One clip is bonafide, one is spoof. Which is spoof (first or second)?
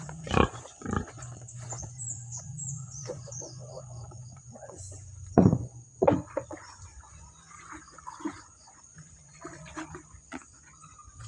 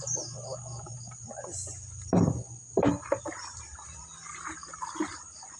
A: first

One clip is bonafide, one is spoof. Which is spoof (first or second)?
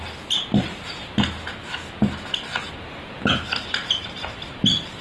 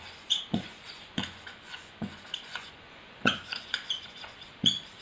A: second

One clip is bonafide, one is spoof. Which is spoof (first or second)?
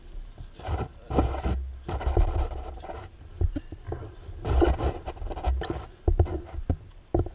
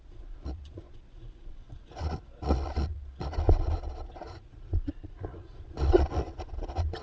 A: second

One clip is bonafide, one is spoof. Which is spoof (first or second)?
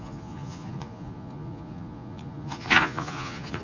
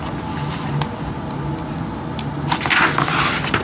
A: first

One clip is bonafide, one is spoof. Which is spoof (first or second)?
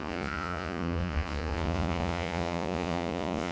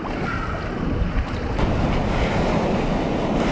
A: first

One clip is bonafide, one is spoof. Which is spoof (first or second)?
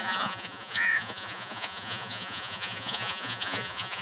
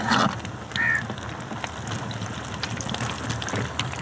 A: first